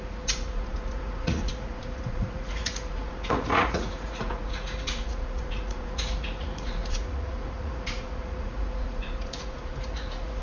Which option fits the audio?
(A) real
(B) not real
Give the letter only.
B